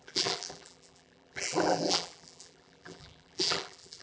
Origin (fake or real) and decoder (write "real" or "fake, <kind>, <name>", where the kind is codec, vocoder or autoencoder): fake, vocoder, BigVGAN v2